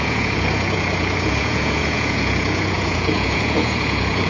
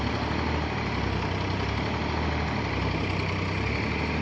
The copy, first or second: first